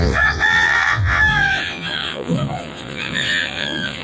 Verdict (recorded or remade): remade